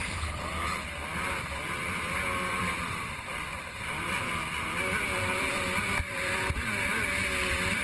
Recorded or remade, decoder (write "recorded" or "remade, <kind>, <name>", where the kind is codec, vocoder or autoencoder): remade, vocoder, BigVGAN v2